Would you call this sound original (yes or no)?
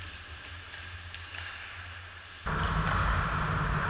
yes